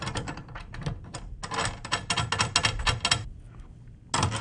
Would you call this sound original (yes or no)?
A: yes